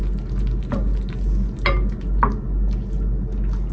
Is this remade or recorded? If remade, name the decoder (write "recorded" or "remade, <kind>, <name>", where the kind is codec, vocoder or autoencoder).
recorded